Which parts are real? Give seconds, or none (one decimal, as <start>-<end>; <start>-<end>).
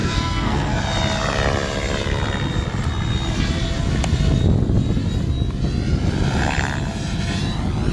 0.8-7.9